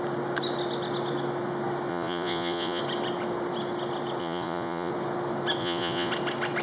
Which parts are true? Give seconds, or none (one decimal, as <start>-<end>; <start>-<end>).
0.0-1.9; 2.8-4.2; 4.9-5.6; 6.1-6.6